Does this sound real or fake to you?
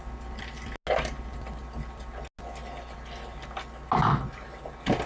real